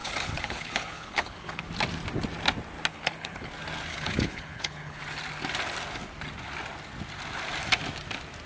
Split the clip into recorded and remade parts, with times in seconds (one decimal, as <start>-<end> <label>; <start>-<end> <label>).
0.0-1.6 remade; 1.6-2.9 recorded; 2.9-3.5 remade; 3.5-3.9 recorded; 3.9-5.0 remade; 5.0-8.5 recorded